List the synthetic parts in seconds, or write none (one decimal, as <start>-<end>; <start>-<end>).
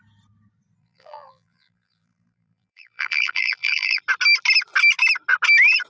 0.8-4.0